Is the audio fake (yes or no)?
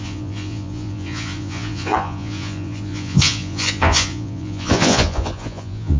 yes